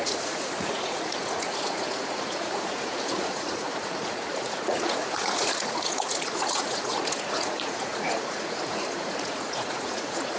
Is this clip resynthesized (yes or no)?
yes